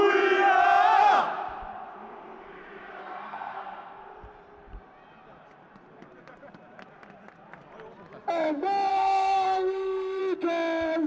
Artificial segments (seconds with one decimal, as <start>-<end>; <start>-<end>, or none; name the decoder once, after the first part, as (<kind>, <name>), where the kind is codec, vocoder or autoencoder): 3.0-4.0 (codec, SNAC); 8.9-10.2